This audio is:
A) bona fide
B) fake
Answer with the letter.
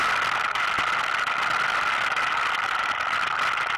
A